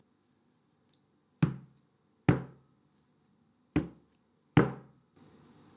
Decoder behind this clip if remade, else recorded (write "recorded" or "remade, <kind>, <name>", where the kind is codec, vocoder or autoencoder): recorded